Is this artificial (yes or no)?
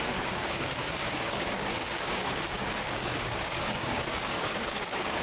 yes